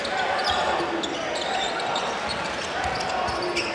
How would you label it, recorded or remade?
recorded